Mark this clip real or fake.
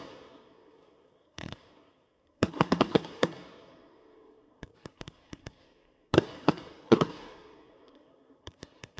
fake